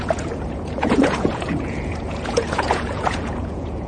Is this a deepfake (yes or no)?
yes